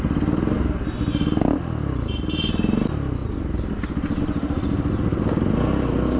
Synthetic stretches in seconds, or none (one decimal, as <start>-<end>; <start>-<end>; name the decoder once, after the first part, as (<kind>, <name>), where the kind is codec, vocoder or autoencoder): none